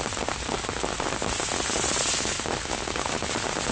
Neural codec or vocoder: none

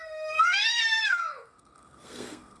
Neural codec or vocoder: codec, SNAC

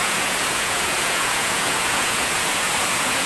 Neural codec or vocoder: vocoder, Vocos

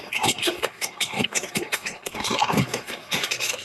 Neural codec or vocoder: codec, SNAC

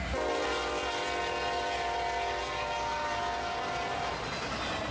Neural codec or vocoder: none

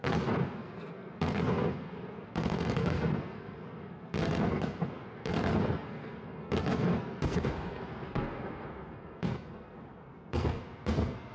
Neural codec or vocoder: codec, SNAC